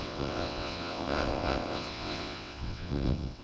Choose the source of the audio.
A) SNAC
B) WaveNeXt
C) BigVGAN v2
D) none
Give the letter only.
B